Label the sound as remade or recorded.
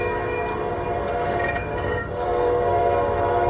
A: remade